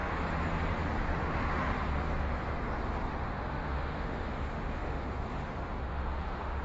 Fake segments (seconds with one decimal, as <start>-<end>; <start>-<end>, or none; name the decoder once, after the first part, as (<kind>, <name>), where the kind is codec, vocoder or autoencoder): 1.2-1.6 (autoencoder, DAC-VAE); 3.2-6.6